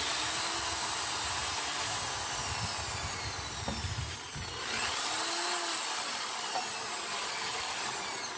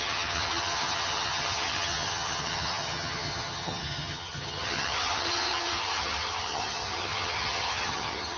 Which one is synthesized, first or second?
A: second